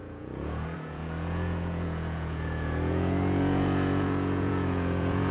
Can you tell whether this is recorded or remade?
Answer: remade